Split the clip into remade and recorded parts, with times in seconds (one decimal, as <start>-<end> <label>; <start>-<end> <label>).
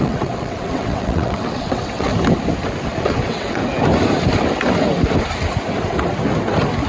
0.0-2.1 remade; 2.1-3.0 recorded; 3.0-3.6 remade; 3.6-6.9 recorded